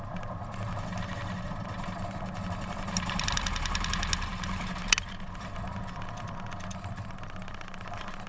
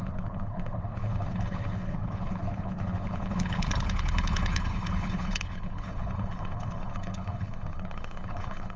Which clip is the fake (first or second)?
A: second